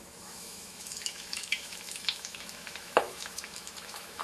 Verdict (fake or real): fake